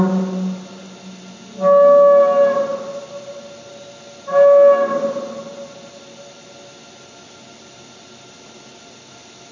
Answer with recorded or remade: recorded